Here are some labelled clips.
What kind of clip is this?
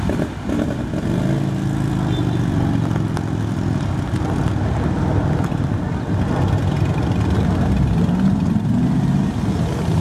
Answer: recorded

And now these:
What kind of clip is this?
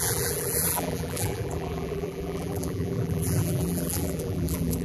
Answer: remade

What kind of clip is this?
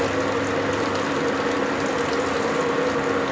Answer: recorded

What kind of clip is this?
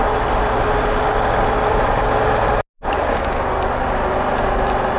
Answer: recorded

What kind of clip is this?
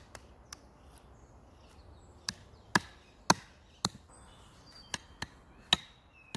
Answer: recorded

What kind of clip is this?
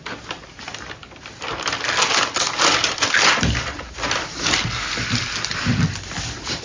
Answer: remade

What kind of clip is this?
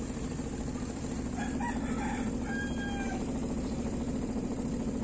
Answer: remade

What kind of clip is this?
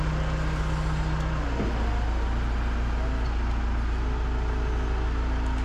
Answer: recorded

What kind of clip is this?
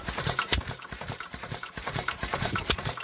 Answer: remade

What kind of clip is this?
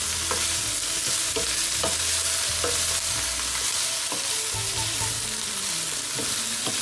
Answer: recorded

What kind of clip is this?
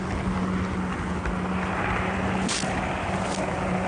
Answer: recorded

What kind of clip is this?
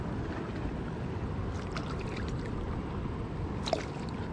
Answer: recorded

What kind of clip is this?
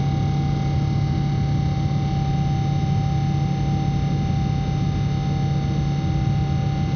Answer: recorded